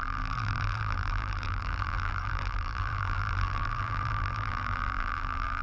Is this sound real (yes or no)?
no